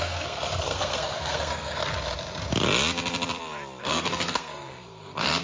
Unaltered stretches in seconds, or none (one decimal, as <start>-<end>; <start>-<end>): 1.8-3.8